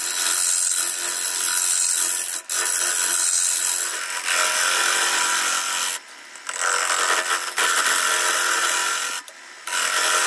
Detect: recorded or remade recorded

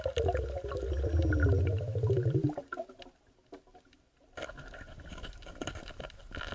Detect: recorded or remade recorded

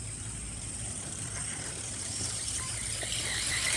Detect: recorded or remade remade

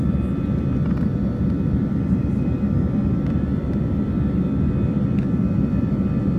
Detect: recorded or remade recorded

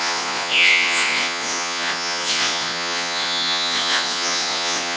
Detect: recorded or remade remade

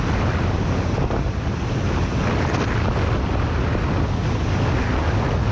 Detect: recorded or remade recorded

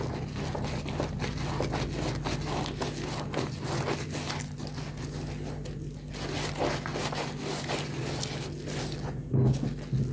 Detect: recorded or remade recorded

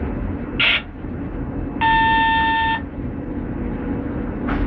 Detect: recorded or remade recorded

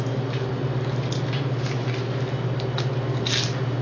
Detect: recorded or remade recorded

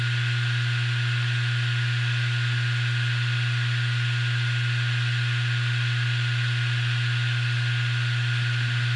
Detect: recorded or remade recorded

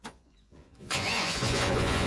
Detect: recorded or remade remade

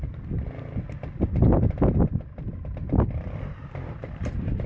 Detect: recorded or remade recorded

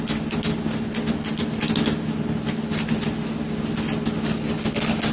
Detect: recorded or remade recorded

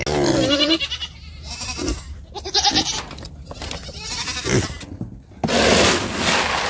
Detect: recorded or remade recorded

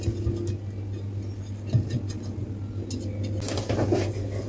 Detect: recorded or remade recorded